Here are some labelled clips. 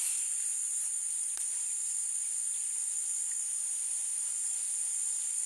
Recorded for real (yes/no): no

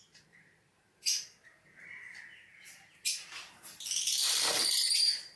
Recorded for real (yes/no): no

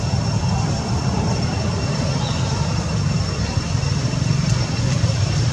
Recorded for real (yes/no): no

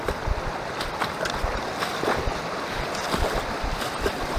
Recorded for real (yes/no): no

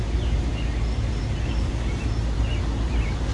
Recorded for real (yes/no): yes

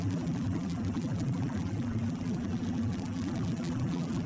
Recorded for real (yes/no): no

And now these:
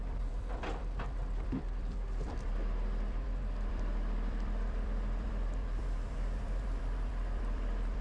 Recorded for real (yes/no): no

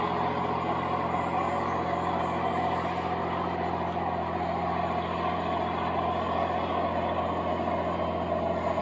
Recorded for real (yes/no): yes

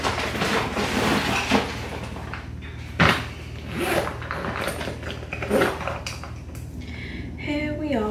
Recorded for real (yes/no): yes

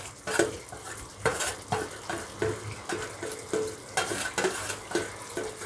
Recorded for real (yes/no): yes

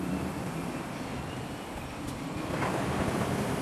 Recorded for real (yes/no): no